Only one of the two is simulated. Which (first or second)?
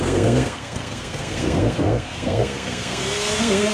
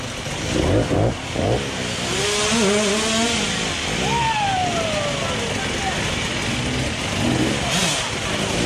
first